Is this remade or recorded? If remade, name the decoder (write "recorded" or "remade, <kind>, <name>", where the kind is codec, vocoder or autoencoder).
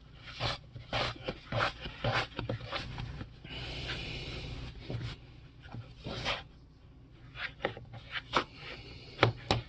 recorded